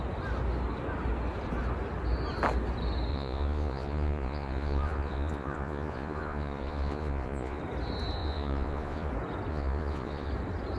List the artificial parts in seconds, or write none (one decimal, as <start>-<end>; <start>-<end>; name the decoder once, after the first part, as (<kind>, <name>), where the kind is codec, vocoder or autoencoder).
3.1-7.6 (vocoder, Vocos); 8.2-9.1; 9.5-10.3